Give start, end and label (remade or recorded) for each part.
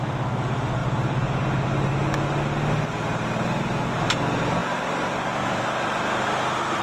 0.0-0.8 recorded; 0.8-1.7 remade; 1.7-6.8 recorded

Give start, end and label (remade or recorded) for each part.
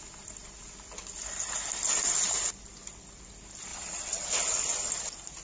0.0-3.7 recorded; 3.7-4.3 remade; 4.3-5.4 recorded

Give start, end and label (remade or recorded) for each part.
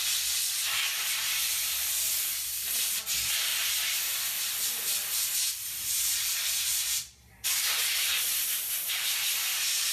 0.0-9.9 remade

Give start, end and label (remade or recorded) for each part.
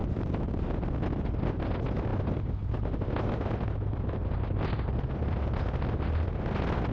0.0-0.6 remade; 0.6-6.9 recorded